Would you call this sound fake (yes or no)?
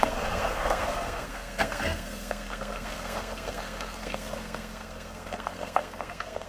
yes